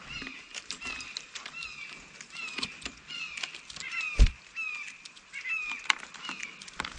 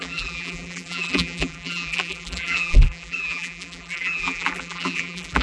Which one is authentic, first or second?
first